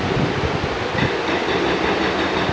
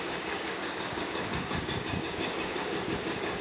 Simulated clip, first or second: second